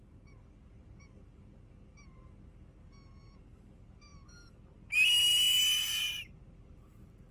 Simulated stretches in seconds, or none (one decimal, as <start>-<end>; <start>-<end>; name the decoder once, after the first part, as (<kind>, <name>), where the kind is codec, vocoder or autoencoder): 4.1-7.3 (vocoder, BigVGAN v2)